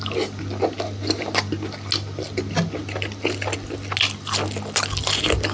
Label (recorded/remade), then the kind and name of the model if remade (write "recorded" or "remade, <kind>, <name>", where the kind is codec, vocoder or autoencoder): recorded